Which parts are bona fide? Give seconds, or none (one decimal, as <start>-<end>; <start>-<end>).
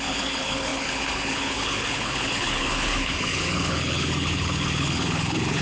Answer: none